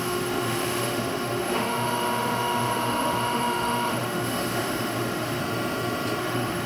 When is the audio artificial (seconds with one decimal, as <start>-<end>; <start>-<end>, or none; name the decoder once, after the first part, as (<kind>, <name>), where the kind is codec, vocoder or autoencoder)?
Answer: 0.0-5.4 (autoencoder, DAC-VAE); 6.2-6.7